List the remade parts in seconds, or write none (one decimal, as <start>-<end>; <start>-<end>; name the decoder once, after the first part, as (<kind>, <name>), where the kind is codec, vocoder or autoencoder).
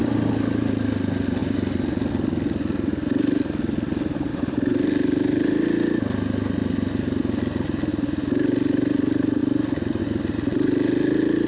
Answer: none